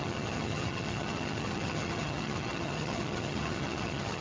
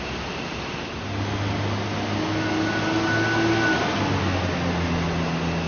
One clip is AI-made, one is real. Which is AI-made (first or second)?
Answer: first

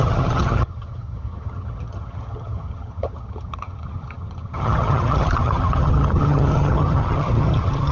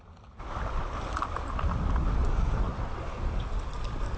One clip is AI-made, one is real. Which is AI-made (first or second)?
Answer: first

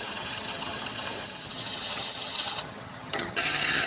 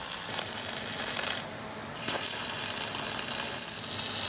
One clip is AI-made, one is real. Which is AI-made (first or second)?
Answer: first